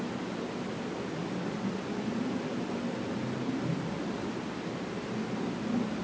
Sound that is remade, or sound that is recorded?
recorded